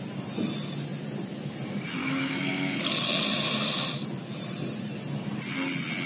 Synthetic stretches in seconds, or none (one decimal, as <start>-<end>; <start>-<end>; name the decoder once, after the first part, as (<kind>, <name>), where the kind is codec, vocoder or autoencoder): 2.0-2.8 (autoencoder, DAC-VAE)